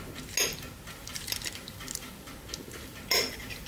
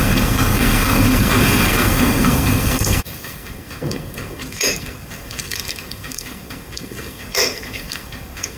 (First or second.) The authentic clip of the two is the first